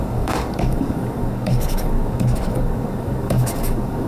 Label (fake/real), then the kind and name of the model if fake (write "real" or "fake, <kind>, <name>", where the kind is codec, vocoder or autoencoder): fake, codec, DAC